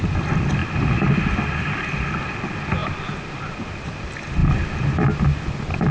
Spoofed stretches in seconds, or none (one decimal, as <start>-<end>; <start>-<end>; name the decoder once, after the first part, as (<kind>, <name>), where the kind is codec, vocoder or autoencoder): none